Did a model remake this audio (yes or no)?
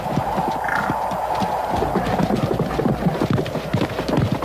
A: no